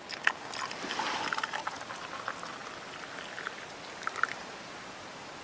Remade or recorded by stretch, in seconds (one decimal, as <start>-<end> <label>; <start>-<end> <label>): 0.0-5.4 recorded